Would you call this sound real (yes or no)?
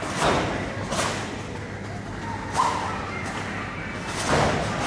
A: yes